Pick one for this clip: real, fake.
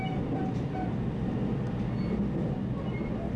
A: real